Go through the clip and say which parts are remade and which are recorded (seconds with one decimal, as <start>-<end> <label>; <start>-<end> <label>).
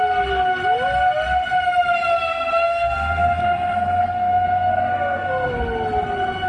0.0-2.3 recorded; 2.3-5.5 remade; 5.5-6.5 recorded